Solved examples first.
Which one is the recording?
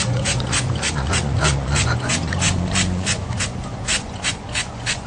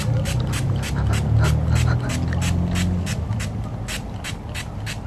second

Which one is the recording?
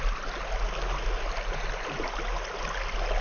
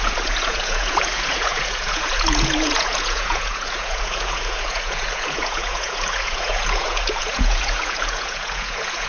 first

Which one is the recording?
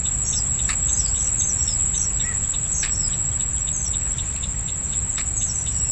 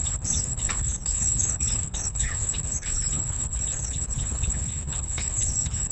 first